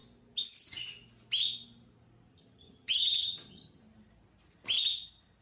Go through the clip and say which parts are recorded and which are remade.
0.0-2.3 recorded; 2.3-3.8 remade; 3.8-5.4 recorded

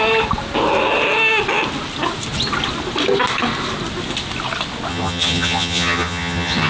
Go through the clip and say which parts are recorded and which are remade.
0.0-4.9 recorded; 4.9-6.7 remade

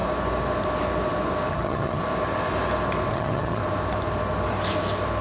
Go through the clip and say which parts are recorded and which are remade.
0.0-1.5 recorded; 1.5-2.0 remade; 2.0-3.1 recorded; 3.1-3.6 remade; 3.6-5.2 recorded

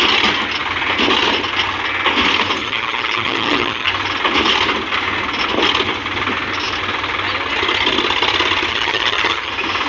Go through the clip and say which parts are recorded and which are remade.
0.0-2.6 recorded; 2.6-3.9 remade; 3.9-8.7 recorded; 8.7-9.5 remade; 9.5-9.9 recorded

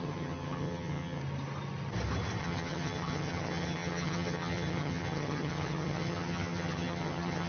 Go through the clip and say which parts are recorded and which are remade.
0.0-1.2 remade; 1.2-2.4 recorded; 2.4-7.5 remade

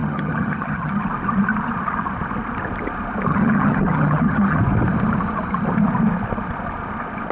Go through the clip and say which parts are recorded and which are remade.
0.0-1.0 remade; 1.0-3.3 recorded; 3.3-4.6 remade; 4.6-7.3 recorded